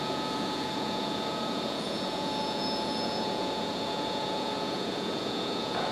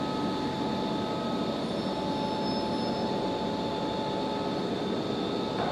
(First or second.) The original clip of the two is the second